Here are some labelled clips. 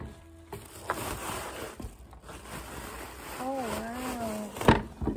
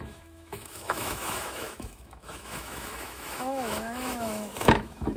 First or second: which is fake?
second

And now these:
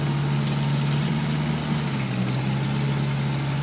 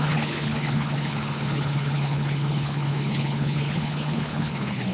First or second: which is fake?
second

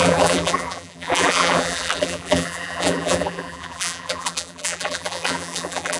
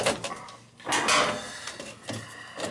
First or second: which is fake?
first